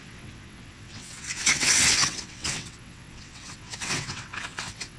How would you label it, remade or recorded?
remade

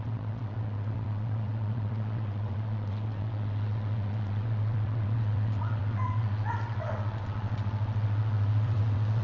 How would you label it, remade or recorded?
remade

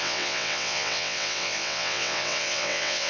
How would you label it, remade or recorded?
remade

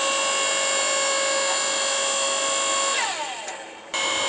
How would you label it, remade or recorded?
recorded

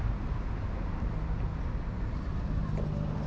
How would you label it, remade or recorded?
recorded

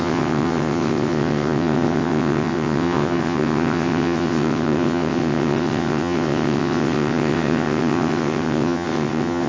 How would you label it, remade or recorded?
remade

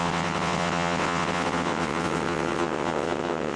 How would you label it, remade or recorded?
remade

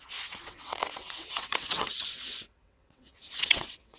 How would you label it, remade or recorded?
remade